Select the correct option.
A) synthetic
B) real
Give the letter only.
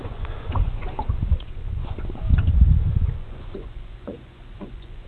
A